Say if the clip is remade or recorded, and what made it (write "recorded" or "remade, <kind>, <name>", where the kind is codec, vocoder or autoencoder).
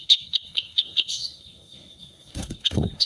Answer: remade, codec, SNAC